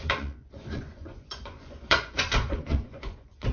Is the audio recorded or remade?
remade